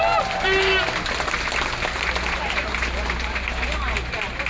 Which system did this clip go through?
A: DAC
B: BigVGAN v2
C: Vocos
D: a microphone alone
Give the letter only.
D